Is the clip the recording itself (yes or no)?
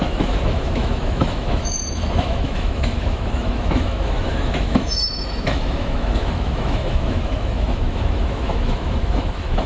no